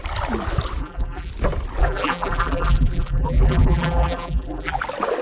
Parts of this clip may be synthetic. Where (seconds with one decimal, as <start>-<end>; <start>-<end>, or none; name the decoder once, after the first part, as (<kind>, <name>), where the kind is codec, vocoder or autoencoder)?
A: 0.8-1.3 (vocoder, BigVGAN v2); 1.8-4.8